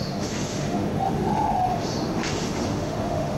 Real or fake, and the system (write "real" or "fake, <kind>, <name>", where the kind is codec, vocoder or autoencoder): fake, autoencoder, DAC-VAE